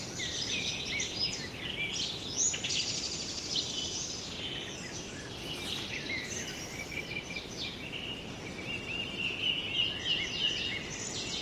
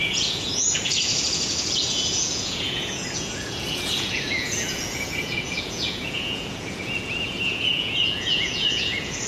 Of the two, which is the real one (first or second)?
first